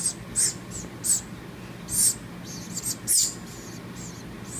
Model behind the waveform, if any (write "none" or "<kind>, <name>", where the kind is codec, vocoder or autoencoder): none